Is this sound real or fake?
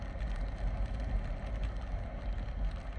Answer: real